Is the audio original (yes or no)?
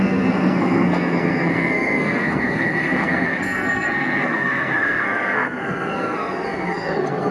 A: no